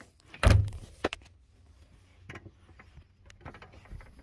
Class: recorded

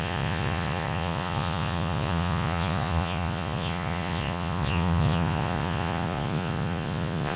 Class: remade